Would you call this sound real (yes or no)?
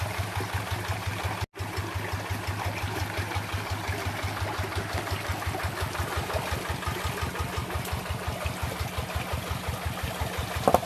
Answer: yes